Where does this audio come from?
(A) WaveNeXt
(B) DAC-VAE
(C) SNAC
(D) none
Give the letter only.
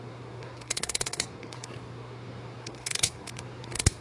C